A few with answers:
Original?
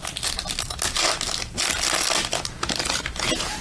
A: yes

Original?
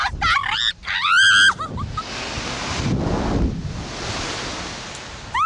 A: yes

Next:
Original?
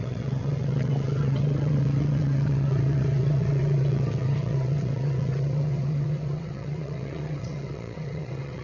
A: no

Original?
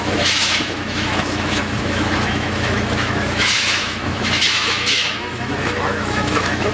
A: no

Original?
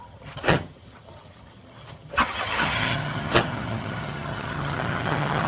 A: no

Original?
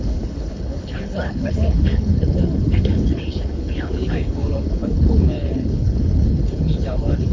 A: no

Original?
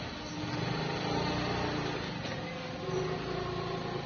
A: yes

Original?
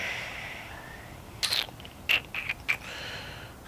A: yes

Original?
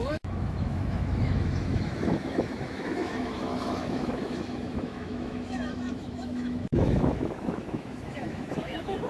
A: no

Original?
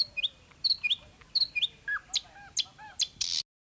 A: yes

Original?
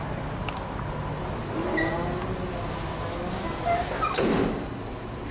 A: yes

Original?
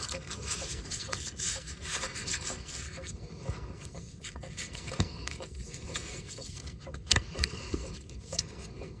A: no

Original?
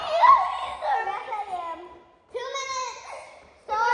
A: yes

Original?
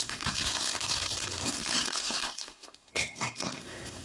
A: no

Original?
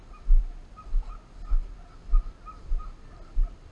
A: yes